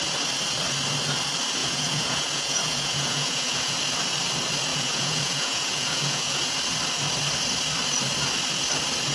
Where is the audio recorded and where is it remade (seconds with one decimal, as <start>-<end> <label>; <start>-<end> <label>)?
0.0-1.6 recorded; 1.6-3.8 remade; 3.8-4.7 recorded; 4.7-6.5 remade; 6.5-9.1 recorded